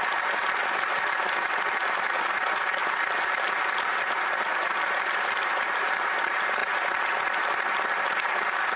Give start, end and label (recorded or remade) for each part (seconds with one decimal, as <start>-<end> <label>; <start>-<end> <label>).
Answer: 0.0-2.8 remade; 2.8-3.3 recorded; 3.3-3.9 remade; 3.9-4.6 recorded; 4.6-6.6 remade; 6.6-7.9 recorded; 7.9-8.8 remade